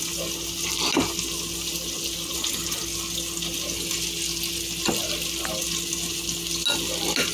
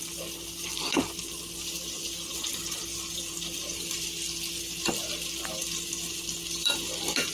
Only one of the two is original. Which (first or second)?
first